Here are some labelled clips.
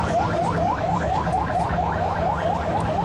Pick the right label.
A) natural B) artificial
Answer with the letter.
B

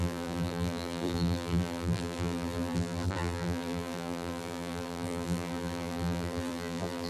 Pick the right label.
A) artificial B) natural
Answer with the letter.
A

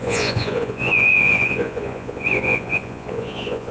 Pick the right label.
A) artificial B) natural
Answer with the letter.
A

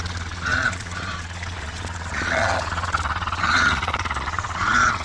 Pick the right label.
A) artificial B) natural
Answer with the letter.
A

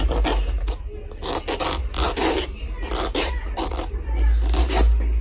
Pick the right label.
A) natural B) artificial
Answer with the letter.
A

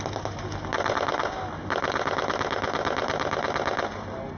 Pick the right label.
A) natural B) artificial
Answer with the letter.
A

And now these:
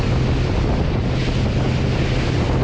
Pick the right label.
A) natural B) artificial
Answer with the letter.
A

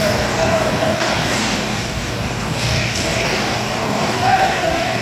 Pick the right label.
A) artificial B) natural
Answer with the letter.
A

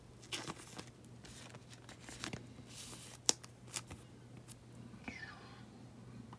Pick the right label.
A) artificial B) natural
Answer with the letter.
B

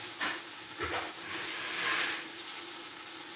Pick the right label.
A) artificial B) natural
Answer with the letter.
B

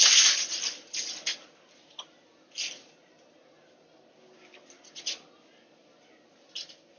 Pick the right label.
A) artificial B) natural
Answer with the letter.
B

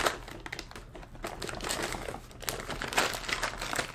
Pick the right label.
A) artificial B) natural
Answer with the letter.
B